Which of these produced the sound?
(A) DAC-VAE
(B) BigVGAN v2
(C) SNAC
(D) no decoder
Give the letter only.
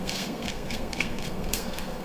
C